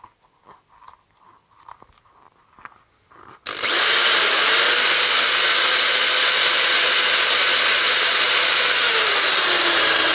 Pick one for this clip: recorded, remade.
recorded